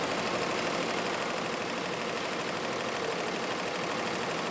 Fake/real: real